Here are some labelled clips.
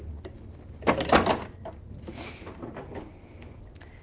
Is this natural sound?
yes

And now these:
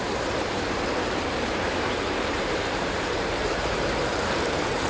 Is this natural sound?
no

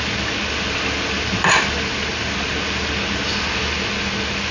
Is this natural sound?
yes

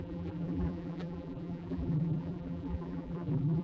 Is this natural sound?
no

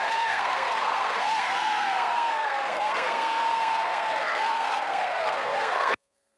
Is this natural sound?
no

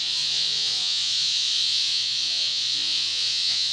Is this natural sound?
no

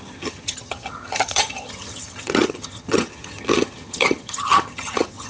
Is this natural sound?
no